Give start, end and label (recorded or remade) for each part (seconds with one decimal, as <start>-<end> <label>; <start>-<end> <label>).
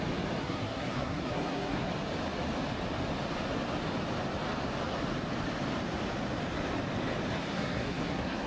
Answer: 0.0-0.4 recorded; 0.4-1.9 remade; 1.9-7.4 recorded; 7.4-8.5 remade